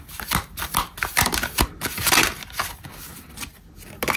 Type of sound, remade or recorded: recorded